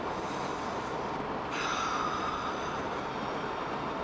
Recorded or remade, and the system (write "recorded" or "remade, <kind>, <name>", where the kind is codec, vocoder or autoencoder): recorded